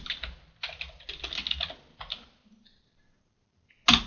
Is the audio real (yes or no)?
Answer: yes